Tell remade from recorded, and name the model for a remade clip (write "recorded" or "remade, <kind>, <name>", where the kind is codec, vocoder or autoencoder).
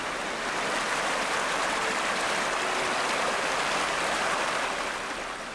recorded